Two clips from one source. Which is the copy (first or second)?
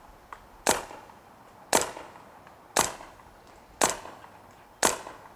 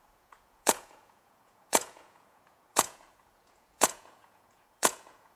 second